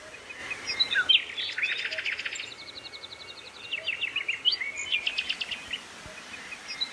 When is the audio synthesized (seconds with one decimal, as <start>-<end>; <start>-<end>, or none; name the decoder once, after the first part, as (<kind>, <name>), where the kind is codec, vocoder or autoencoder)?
none